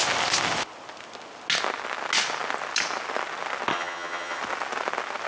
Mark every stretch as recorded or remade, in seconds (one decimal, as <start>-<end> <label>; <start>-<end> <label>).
0.0-3.7 recorded; 3.7-4.4 remade; 4.4-5.3 recorded